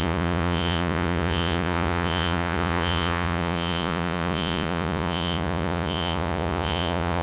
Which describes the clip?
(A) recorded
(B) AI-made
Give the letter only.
B